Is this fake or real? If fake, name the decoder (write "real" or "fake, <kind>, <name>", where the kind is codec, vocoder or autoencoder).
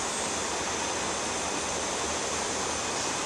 real